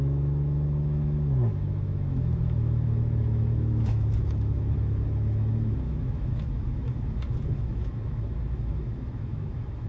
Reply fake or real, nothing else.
fake